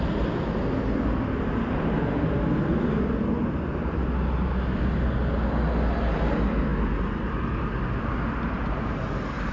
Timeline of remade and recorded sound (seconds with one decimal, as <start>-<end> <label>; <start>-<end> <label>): 0.0-9.5 recorded